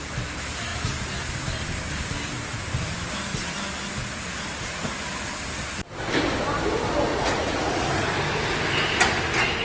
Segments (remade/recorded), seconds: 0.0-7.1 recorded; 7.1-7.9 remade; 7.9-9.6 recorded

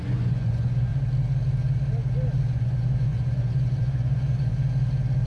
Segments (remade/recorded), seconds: 0.0-0.9 remade; 0.9-2.5 recorded; 2.5-4.5 remade; 4.5-5.3 recorded